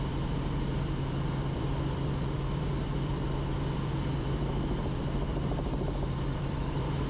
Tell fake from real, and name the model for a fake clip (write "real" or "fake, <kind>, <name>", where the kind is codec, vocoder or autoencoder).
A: fake, vocoder, BigVGAN v2